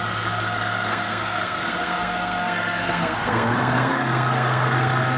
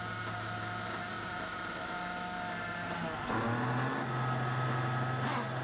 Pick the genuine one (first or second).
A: second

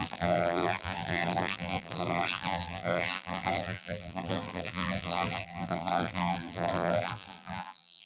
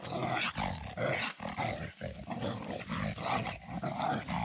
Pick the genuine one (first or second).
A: second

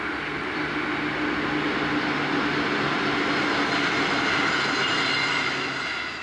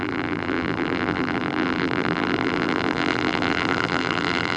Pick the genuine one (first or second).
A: first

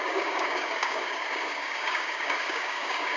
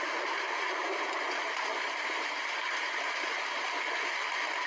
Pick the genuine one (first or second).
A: second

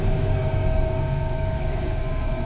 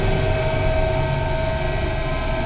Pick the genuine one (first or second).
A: second